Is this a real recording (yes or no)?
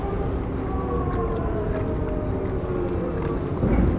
yes